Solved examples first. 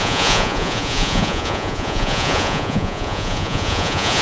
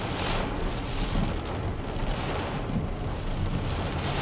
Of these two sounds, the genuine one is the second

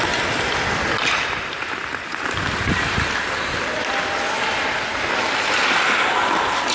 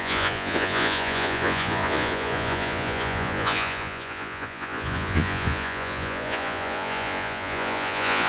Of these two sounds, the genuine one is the first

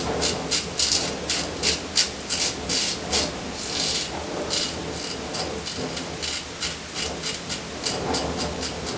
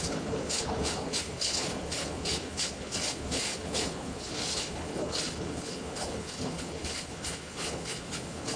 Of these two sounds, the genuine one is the first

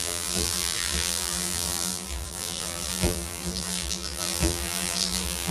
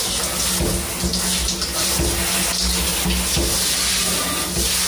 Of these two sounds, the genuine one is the second